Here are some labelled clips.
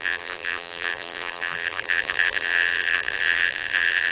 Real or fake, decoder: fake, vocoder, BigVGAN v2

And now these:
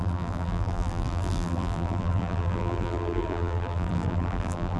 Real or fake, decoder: fake, vocoder, BigVGAN v2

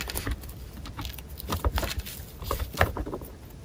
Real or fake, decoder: real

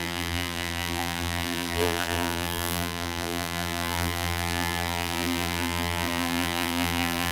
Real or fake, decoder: fake, vocoder, BigVGAN v2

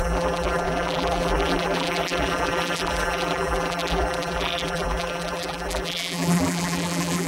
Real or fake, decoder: fake, vocoder, BigVGAN v2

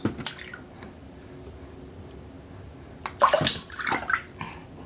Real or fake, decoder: real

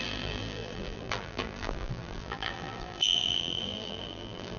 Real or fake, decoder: fake, vocoder, BigVGAN v2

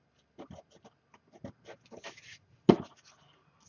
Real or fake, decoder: real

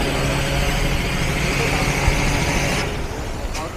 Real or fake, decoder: real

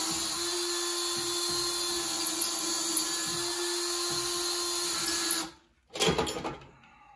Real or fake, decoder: real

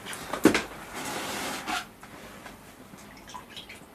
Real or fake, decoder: real